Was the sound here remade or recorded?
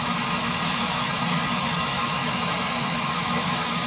remade